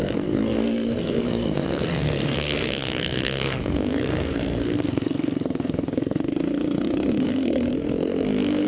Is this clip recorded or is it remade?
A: remade